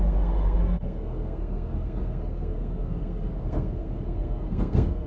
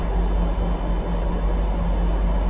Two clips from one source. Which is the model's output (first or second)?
first